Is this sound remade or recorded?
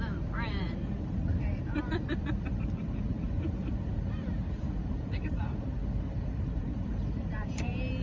remade